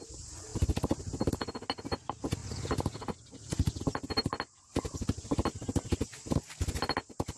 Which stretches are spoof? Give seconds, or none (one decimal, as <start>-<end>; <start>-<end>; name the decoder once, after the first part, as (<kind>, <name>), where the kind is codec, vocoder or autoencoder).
none